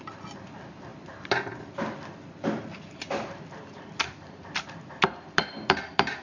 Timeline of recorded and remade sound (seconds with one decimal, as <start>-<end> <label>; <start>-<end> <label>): 0.0-0.9 remade; 0.9-4.1 recorded; 4.1-6.2 remade